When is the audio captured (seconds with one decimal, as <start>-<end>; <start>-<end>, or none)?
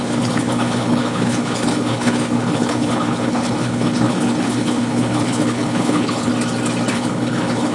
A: 6.3-6.9